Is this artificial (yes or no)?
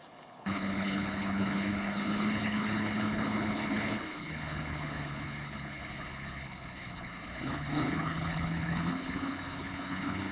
yes